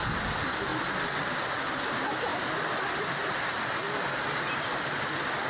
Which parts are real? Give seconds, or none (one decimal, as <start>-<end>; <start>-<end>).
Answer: 0.0-5.5